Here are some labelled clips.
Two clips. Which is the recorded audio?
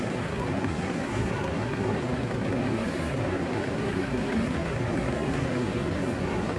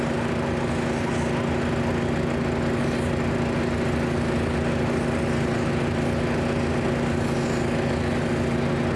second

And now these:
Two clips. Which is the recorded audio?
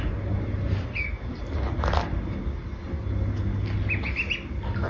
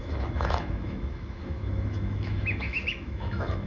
first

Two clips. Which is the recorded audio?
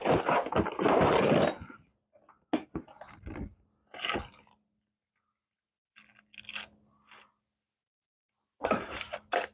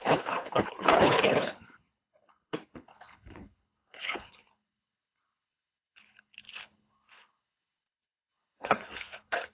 first